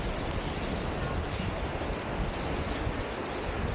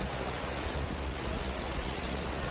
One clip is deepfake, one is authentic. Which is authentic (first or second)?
first